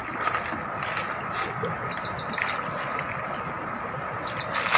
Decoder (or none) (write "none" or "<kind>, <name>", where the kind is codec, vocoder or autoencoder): none